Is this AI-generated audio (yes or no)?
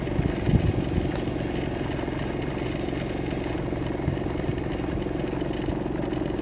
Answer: no